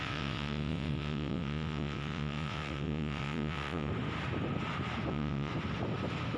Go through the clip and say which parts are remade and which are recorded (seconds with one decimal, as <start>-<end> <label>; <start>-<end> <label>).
0.0-3.9 remade; 3.9-5.1 recorded; 5.1-5.5 remade; 5.5-6.4 recorded